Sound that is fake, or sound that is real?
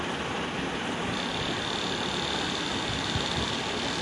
real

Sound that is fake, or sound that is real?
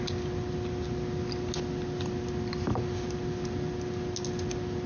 real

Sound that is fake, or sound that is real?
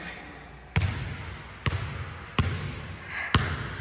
real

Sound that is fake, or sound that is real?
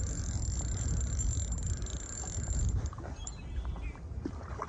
real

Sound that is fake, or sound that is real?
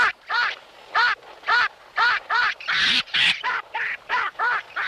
fake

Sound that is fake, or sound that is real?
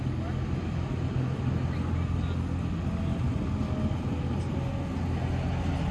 real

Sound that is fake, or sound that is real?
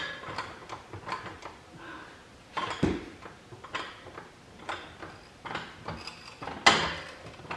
real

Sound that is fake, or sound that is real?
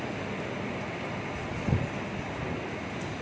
real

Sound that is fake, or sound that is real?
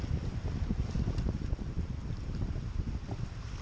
real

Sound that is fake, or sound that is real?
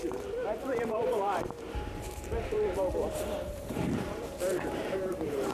fake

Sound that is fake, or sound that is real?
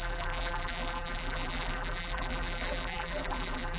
fake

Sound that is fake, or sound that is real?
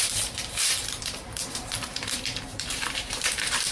fake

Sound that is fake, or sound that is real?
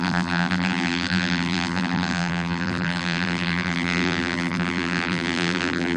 fake